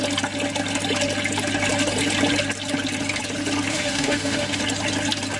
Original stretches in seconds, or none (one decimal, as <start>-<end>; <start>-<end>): 0.0-3.7; 4.6-5.4